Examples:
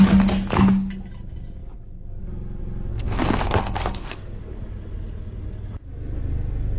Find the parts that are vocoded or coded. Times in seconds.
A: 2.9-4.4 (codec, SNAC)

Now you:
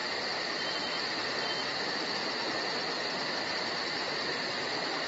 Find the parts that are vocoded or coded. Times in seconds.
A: none

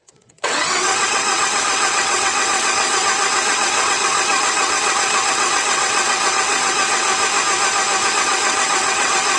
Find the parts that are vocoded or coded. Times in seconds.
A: 0.0-7.1 (vocoder, WaveNeXt); 8.1-9.4

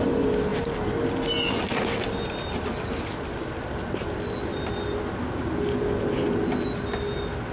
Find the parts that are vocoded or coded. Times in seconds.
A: none